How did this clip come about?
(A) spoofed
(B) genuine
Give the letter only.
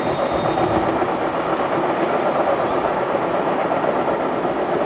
B